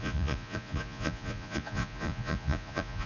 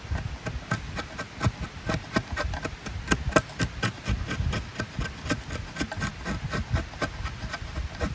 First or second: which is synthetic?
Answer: first